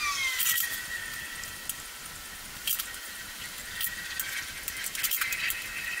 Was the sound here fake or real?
real